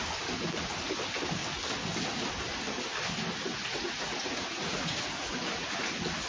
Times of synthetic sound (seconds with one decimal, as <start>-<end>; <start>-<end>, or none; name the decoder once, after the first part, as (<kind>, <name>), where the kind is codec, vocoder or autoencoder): 3.5-5.8 (vocoder, Vocos)